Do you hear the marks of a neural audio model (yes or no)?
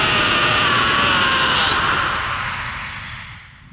no